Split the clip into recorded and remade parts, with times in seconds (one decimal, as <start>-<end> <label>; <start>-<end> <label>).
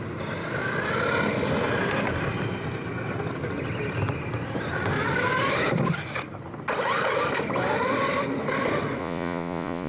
0.0-9.0 recorded; 9.0-9.9 remade